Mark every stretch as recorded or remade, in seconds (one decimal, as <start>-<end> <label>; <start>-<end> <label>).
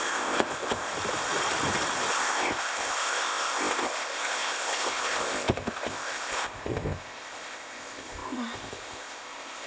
0.0-0.9 remade; 0.9-2.1 recorded; 2.1-9.7 remade